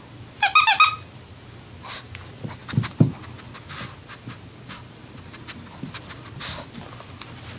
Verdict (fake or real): real